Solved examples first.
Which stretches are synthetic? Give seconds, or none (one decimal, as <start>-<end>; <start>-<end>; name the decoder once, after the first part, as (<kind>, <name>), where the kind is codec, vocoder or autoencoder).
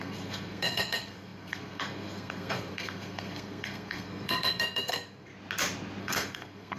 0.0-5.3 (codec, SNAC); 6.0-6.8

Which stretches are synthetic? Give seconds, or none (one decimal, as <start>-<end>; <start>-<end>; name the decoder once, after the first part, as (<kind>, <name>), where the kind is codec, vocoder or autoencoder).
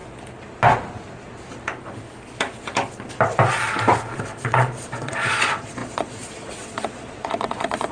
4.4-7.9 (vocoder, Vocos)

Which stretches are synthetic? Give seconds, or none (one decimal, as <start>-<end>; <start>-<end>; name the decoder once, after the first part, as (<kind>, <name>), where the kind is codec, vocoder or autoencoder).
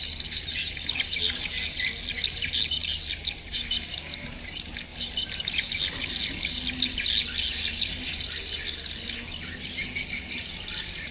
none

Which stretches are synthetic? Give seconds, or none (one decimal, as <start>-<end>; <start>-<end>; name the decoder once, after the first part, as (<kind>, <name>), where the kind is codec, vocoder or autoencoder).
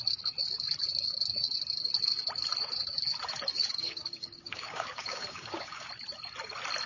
3.5-5.9 (codec, DAC)